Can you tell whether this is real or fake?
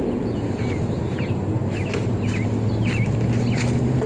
real